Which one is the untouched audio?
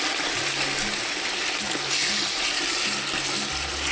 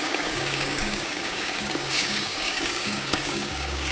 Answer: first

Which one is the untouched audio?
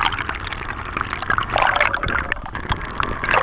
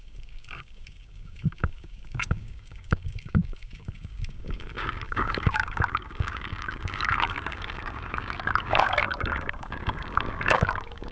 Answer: first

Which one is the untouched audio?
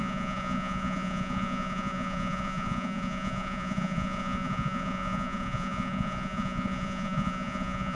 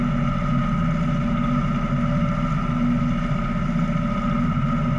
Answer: second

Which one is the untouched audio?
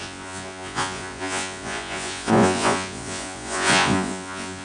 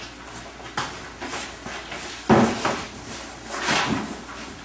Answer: second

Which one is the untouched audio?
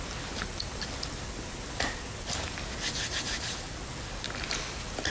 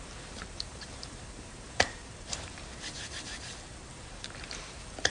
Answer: first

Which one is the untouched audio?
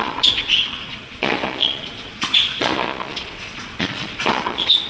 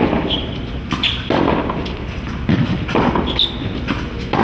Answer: second